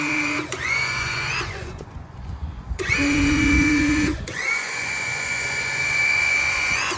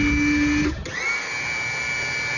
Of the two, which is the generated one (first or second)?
first